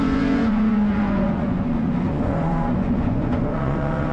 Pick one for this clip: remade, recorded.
remade